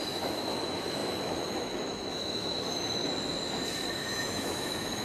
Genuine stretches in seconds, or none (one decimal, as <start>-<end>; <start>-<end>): 3.0-3.9